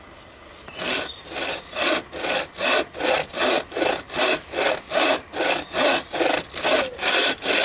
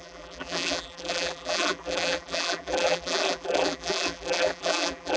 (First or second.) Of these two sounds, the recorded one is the first